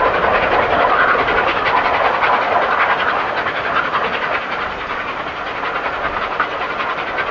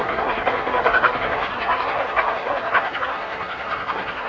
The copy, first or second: second